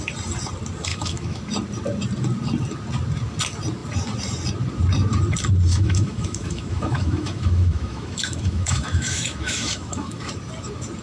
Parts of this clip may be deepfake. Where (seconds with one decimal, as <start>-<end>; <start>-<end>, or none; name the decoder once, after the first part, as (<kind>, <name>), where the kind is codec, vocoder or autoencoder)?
0.9-1.4 (autoencoder, DAC-VAE); 5.7-10.3